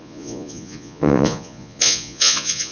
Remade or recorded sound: remade